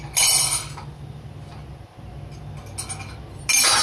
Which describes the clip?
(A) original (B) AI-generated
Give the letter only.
A